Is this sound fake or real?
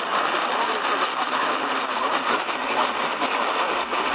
real